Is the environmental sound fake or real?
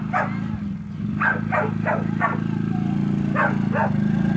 real